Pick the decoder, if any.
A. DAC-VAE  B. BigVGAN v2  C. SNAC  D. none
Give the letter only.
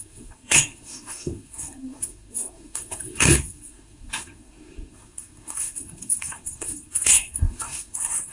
C